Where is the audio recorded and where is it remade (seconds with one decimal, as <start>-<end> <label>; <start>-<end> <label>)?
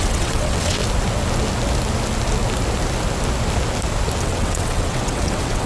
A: 0.0-0.8 remade; 0.8-4.2 recorded; 4.2-5.7 remade